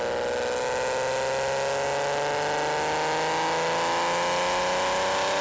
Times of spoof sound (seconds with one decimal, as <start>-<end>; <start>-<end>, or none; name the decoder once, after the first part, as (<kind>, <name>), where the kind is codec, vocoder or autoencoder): none